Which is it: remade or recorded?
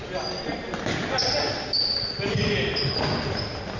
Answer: recorded